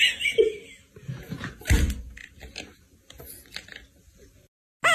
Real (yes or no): yes